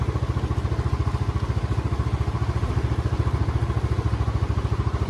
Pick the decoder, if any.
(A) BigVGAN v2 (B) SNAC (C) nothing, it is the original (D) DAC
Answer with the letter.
C